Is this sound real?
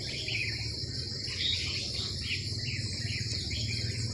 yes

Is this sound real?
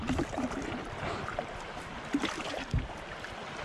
yes